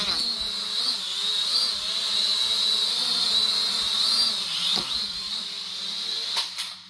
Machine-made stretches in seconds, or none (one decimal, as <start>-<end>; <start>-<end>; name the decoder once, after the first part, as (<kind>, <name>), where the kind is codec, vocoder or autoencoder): none